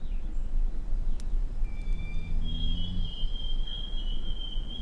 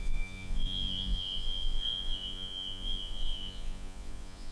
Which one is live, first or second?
first